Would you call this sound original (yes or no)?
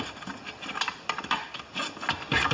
yes